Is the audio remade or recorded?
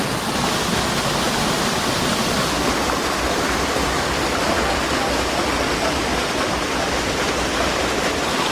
recorded